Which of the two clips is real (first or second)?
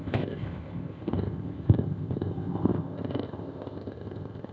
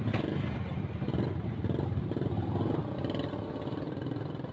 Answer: second